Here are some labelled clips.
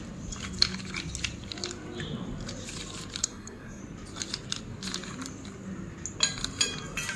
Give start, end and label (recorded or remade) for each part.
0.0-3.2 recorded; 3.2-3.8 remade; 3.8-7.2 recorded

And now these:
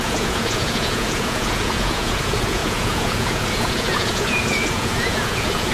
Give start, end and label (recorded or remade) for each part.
0.0-5.7 remade

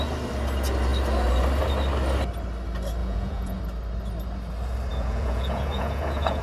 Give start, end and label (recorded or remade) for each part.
0.0-3.0 recorded; 3.0-3.6 remade; 3.6-4.9 recorded; 4.9-6.4 remade

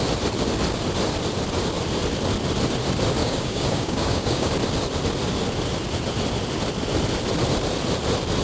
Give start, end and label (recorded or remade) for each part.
0.0-3.2 recorded; 3.2-4.5 remade; 4.5-8.4 recorded

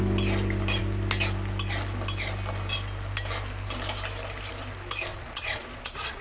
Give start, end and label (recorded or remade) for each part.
0.0-5.1 recorded; 5.1-6.2 remade

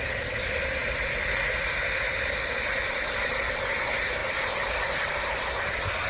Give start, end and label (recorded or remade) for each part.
0.0-6.1 recorded

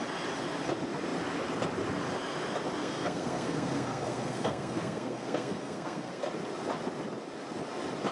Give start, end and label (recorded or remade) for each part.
0.0-2.8 recorded; 2.8-6.2 remade; 6.2-8.1 recorded

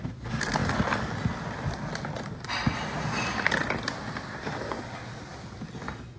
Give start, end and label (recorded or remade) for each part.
0.0-6.2 recorded